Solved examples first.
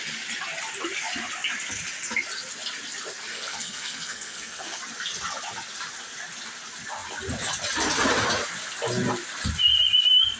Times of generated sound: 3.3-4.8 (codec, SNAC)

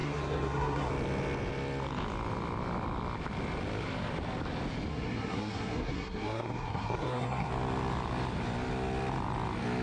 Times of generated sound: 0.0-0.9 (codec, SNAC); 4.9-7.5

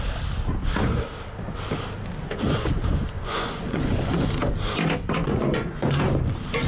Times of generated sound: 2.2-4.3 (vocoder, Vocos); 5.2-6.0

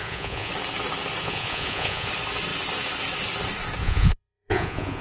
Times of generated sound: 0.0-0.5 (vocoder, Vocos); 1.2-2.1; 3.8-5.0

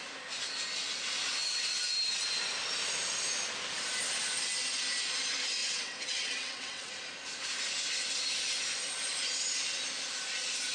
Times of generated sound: 5.6-6.9 (vocoder, WaveNeXt)

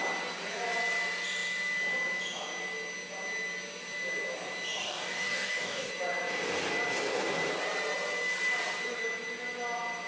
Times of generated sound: 4.8-5.9 (codec, DAC)

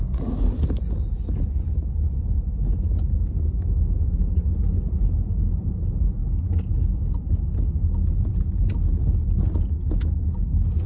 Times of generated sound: none